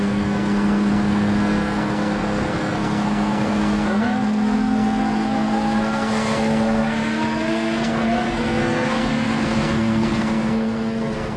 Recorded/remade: remade